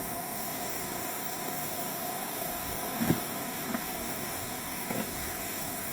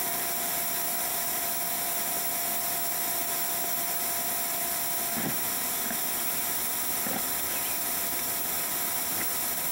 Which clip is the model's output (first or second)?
first